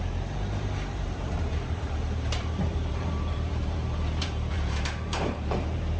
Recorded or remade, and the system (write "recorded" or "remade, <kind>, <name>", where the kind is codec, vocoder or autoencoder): remade, vocoder, BigVGAN v2